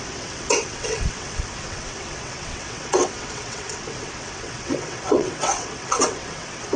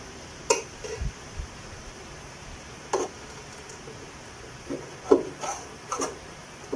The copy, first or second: first